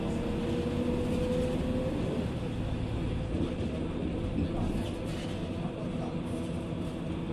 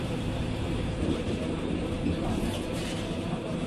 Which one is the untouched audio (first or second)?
first